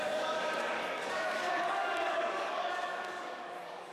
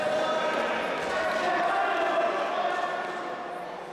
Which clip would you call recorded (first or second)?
second